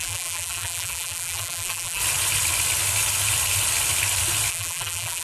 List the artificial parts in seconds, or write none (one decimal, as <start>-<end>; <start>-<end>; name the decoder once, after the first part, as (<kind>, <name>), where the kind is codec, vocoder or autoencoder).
0.0-2.0 (vocoder, BigVGAN v2); 4.5-5.2